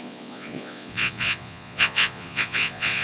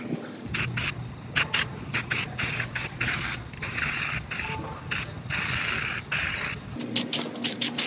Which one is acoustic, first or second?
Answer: second